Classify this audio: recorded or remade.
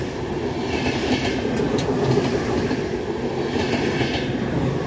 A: recorded